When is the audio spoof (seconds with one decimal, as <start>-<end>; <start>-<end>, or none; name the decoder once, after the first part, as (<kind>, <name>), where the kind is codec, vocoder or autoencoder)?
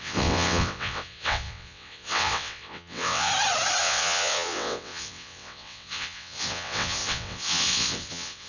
0.0-3.3 (vocoder, WaveNeXt); 3.8-8.5